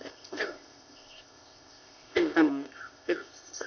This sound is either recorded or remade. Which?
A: remade